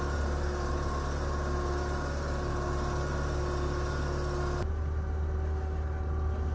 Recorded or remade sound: recorded